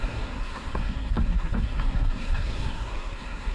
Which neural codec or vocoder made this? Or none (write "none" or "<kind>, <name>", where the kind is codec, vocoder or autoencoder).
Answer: codec, SNAC